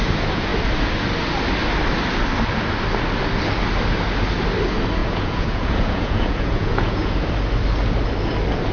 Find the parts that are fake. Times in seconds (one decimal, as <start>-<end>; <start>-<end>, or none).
5.0-7.3